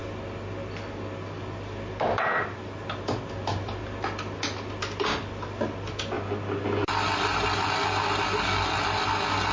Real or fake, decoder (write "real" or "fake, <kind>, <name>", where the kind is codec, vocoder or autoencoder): real